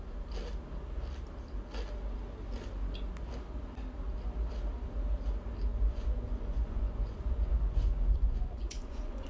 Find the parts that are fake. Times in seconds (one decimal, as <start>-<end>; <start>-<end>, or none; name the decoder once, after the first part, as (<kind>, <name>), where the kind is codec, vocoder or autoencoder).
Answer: 5.7-9.3 (vocoder, Vocos)